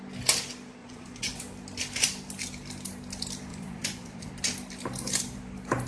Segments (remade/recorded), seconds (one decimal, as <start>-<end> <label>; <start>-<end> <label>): 0.0-0.8 recorded; 0.8-1.4 remade; 1.4-3.5 recorded; 3.5-4.3 remade; 4.3-5.9 recorded